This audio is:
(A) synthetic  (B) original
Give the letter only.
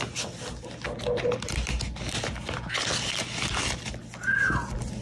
B